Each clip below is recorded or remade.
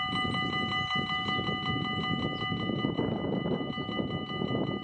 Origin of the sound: recorded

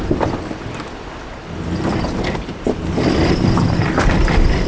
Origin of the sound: recorded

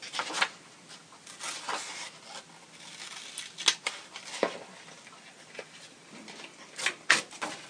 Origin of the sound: recorded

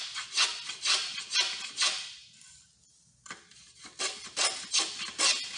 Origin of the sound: recorded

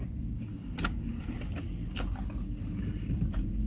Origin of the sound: recorded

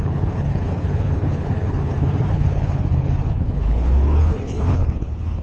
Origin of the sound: remade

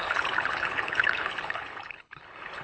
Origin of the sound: remade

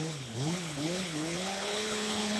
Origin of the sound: remade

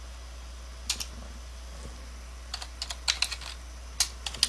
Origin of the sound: recorded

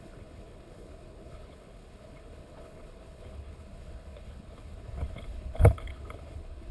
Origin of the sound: remade